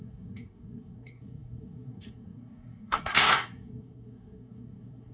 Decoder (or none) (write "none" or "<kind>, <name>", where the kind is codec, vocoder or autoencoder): codec, SNAC